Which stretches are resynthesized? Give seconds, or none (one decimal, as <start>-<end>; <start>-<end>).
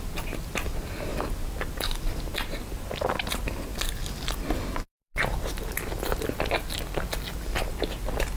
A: none